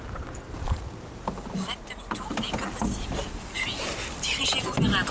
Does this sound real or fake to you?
real